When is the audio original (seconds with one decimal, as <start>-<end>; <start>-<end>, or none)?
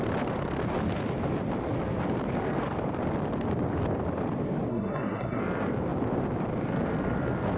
0.0-4.7; 5.4-7.6